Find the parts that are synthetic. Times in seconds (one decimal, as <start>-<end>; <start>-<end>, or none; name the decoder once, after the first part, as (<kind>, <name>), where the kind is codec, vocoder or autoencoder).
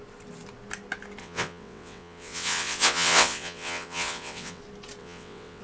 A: 1.2-4.6 (vocoder, WaveNeXt); 5.0-5.6